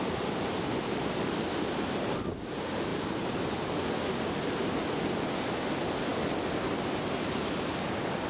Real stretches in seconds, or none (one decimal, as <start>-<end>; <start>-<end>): 0.0-2.9; 3.4-8.3